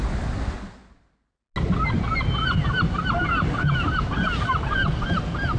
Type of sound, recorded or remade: recorded